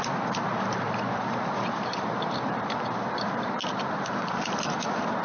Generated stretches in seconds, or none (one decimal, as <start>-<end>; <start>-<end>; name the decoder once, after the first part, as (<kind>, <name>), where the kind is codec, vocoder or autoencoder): 0.5-3.6 (vocoder, BigVGAN v2)